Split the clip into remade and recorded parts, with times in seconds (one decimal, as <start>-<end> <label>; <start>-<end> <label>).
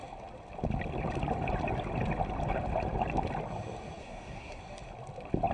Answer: 0.0-4.0 recorded; 4.0-4.6 remade; 4.6-5.5 recorded